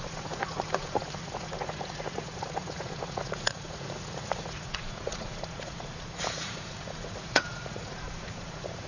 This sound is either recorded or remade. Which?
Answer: remade